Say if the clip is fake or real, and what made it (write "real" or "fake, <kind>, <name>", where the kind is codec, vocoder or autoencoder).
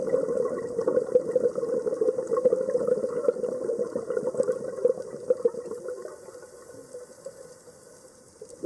real